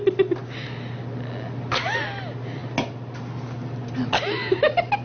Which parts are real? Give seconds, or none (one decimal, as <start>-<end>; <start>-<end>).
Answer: 0.0-5.0